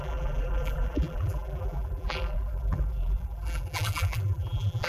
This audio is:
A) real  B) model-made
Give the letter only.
B